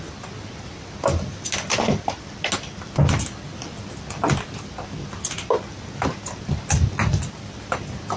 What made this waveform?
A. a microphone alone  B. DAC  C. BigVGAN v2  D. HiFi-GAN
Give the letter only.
A